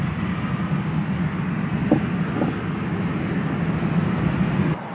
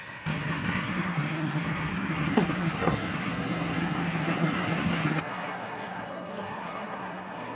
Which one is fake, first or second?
second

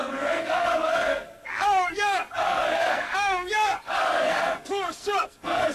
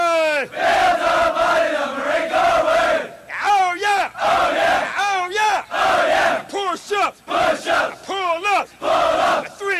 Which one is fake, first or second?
first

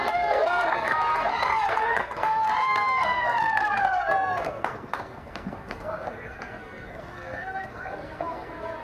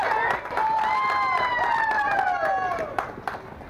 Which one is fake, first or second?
first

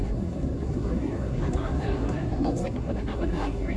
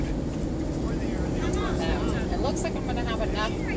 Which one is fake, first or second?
first